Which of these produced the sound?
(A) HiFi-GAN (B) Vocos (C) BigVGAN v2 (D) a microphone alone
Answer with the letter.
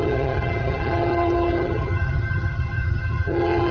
A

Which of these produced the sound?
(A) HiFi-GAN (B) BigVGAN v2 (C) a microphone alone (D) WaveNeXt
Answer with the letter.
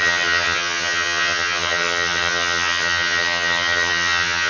A